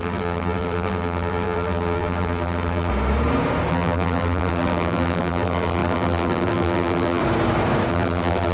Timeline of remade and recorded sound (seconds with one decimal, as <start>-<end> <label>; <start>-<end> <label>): 0.0-2.9 remade; 2.9-3.7 recorded; 3.7-7.2 remade; 7.2-7.9 recorded; 7.9-8.5 remade